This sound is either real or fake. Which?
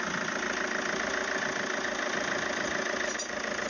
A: real